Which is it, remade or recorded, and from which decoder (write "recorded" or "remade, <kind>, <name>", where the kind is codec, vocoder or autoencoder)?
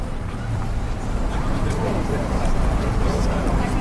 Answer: remade, vocoder, BigVGAN v2